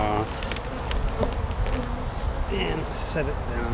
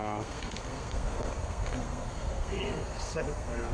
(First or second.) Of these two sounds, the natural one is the first